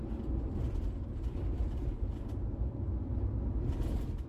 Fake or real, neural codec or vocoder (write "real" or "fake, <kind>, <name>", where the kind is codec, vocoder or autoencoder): real